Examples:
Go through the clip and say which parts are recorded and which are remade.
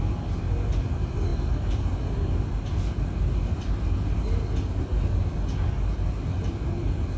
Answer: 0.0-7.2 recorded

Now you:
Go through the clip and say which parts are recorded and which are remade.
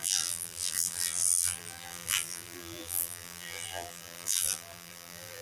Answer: 0.0-5.4 remade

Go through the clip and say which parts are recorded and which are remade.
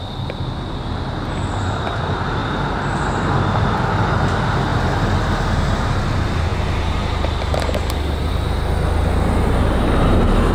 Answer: 0.0-2.4 recorded; 2.4-3.0 remade; 3.0-6.5 recorded; 6.5-8.3 remade; 8.3-10.5 recorded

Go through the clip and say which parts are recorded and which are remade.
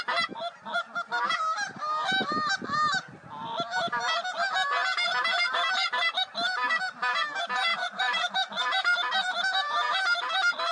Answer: 0.0-5.1 recorded; 5.1-6.8 remade; 6.8-7.7 recorded; 7.7-8.3 remade; 8.3-8.9 recorded; 8.9-9.9 remade; 9.9-10.7 recorded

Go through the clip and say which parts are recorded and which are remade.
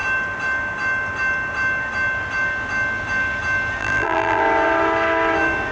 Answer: 0.0-3.8 recorded; 3.8-4.4 remade; 4.4-5.7 recorded